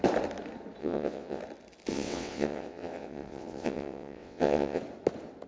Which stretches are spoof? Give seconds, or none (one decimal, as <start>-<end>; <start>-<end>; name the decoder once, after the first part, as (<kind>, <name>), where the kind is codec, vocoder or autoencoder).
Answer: 0.8-1.4 (vocoder, WaveNeXt); 1.9-4.8